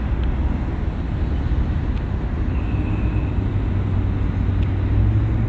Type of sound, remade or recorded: recorded